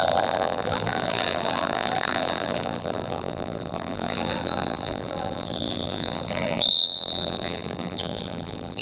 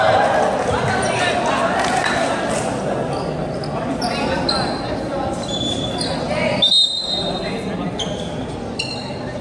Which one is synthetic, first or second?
first